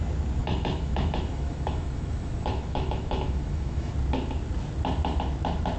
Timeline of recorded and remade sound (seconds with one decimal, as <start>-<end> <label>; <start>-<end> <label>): 0.0-0.4 recorded; 0.4-3.9 remade; 3.9-5.8 recorded